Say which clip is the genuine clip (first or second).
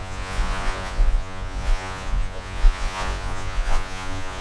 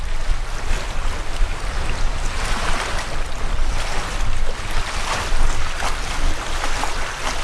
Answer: second